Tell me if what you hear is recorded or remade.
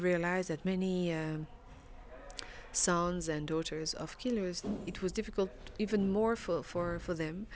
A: recorded